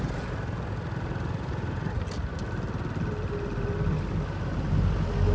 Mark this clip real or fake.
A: real